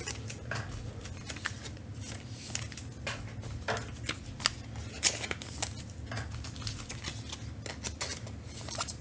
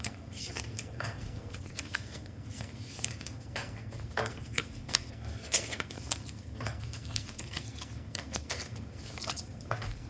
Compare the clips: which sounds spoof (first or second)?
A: second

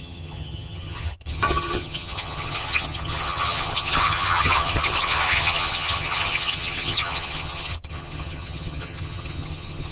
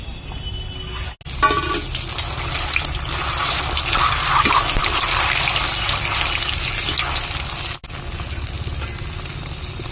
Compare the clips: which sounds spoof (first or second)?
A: first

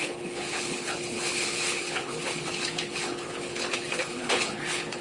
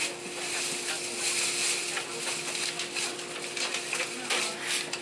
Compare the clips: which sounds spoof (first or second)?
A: first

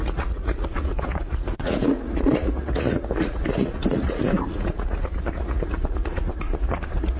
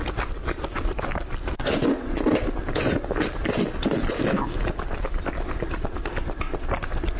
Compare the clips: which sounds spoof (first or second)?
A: first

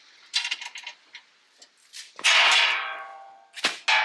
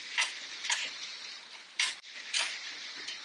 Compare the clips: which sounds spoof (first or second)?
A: second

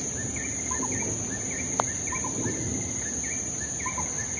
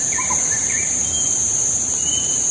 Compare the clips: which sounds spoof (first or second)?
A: second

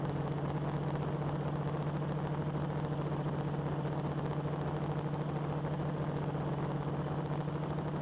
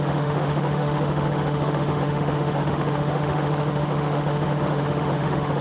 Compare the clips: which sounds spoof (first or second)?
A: second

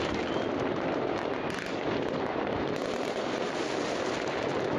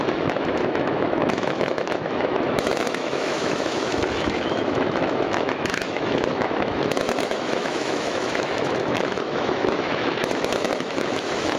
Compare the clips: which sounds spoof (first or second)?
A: second